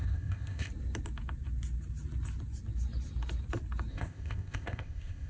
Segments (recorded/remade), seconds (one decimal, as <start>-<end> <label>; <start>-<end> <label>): 0.0-0.7 remade; 0.7-3.9 recorded; 3.9-5.3 remade